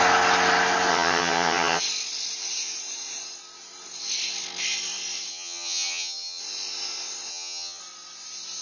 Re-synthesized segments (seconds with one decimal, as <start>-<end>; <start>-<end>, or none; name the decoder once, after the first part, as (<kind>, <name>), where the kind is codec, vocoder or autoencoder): 0.9-1.8 (vocoder, HiFi-GAN); 5.3-6.4; 7.3-7.8

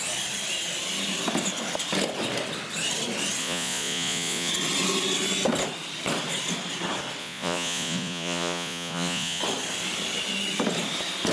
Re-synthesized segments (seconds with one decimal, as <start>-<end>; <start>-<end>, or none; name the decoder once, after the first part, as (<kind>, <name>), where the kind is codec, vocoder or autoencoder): 3.4-4.5 (vocoder, Vocos); 7.2-9.4

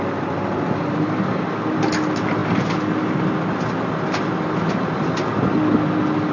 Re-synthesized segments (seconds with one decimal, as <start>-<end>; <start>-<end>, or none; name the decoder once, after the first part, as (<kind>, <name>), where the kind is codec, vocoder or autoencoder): none

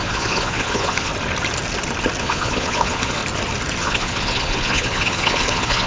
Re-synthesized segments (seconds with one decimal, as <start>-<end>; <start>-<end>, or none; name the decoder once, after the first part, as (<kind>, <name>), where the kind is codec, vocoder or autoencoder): 0.0-1.1 (vocoder, Vocos); 2.2-3.2; 3.8-5.9

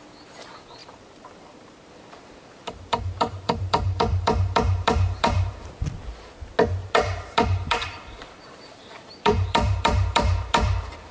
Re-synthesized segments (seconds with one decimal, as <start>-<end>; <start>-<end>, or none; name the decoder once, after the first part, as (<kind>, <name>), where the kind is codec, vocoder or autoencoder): 0.8-5.7 (vocoder, BigVGAN v2); 6.8-11.1

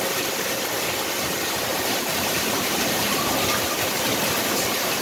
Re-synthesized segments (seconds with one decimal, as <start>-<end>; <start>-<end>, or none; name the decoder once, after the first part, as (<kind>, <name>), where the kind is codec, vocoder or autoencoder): 1.7-5.0 (vocoder, BigVGAN v2)